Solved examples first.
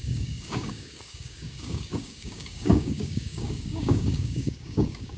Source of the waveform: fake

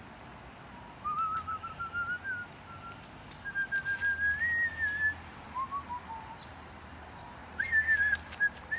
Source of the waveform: real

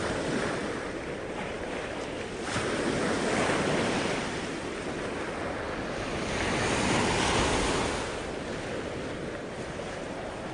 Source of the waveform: real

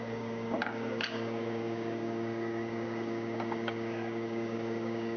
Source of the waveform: fake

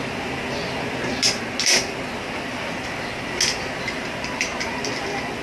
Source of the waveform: real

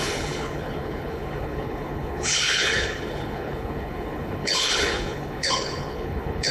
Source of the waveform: fake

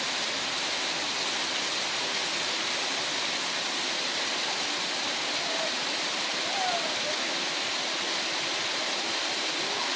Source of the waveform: real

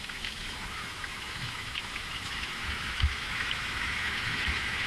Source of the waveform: fake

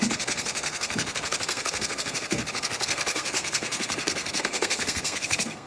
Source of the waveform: fake